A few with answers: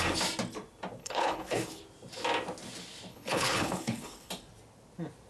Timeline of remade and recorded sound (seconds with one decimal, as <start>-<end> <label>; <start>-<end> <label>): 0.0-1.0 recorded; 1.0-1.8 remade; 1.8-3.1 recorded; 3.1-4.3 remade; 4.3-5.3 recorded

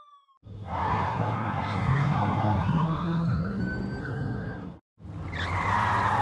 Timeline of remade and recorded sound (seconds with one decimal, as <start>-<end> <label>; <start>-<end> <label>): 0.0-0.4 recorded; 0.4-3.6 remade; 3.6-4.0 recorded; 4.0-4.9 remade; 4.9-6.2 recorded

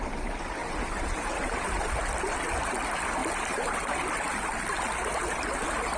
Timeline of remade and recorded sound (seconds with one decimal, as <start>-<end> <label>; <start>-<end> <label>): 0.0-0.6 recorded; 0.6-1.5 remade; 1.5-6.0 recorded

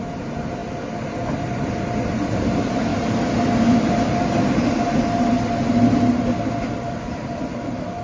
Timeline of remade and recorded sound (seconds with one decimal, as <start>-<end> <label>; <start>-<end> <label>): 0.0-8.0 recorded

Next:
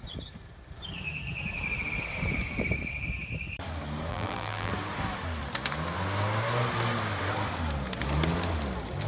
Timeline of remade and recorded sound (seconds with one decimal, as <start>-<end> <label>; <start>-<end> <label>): 0.0-4.1 recorded; 4.1-4.7 remade; 4.7-9.1 recorded

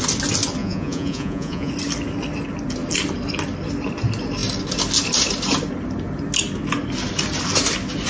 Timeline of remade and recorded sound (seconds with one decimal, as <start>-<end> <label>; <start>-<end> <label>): 0.0-0.6 recorded; 0.6-1.7 remade; 1.7-8.1 recorded

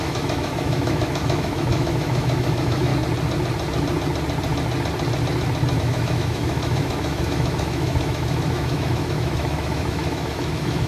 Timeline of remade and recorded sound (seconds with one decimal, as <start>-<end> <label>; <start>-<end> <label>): 0.0-2.9 remade; 2.9-5.8 recorded; 5.8-10.9 remade

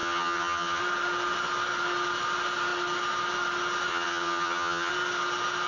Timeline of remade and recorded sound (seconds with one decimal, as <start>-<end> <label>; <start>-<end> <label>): 0.0-0.8 remade; 0.8-3.9 recorded; 3.9-4.9 remade; 4.9-5.7 recorded